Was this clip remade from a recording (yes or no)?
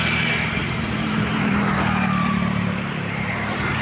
yes